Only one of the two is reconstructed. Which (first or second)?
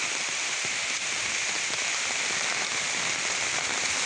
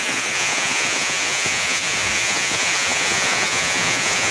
second